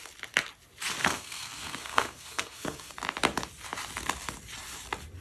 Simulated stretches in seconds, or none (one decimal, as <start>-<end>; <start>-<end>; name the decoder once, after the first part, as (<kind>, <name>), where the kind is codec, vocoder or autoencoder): 1.0-2.9 (codec, SNAC)